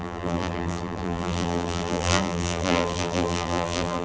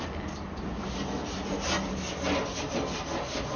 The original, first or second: second